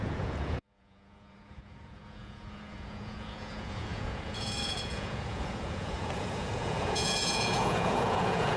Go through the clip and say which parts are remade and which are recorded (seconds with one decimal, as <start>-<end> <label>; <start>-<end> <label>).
0.0-8.6 remade